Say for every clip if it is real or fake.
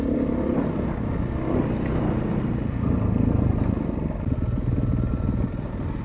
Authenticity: real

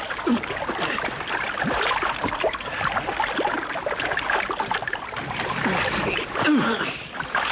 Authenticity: real